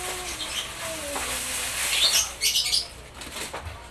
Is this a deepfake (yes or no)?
no